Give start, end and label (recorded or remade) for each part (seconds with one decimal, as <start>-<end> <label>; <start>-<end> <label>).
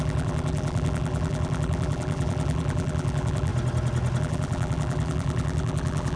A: 0.0-3.5 remade; 3.5-4.2 recorded; 4.2-6.2 remade